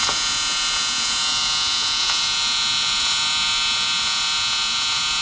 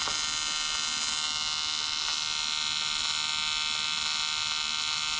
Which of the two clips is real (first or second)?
second